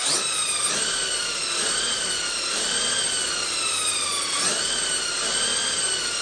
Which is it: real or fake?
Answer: real